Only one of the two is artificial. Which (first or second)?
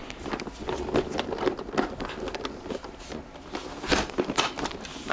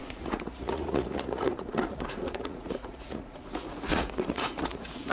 second